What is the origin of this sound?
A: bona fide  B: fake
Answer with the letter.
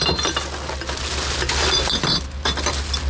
A